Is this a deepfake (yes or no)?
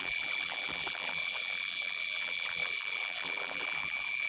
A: yes